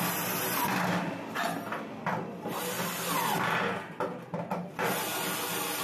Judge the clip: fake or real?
real